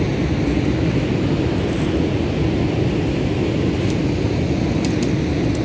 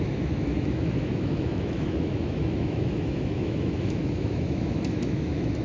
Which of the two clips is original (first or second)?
first